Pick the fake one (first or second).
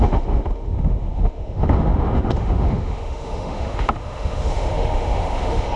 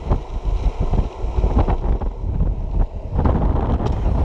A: first